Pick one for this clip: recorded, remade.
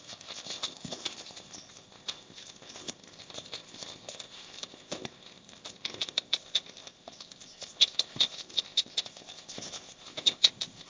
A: remade